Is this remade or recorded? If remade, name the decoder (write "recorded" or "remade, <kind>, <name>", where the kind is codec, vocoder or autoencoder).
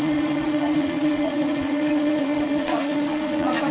remade, vocoder, Vocos